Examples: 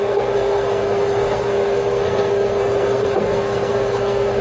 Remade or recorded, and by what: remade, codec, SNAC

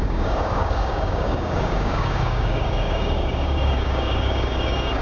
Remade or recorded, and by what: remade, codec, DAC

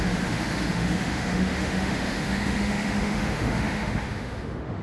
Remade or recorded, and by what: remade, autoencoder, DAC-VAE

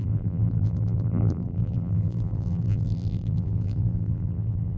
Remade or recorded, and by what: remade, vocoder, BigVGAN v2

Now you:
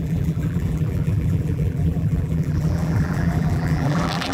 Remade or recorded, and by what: remade, vocoder, BigVGAN v2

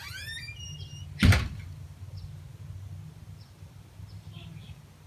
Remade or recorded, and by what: recorded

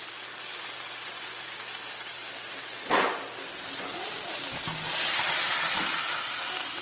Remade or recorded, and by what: recorded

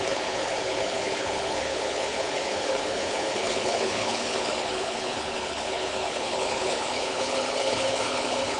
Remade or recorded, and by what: remade, codec, HILCodec